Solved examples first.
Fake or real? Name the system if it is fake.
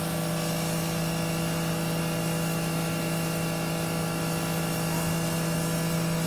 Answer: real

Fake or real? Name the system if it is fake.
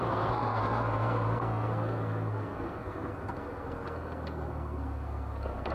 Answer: fake, codec, SNAC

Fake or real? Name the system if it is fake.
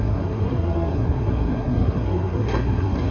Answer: fake, codec, SNAC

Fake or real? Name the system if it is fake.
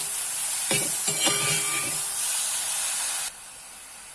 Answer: real